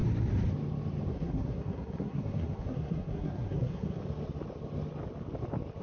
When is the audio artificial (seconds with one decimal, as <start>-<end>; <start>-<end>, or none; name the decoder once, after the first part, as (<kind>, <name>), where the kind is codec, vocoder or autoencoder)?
1.1-4.0 (codec, SNAC)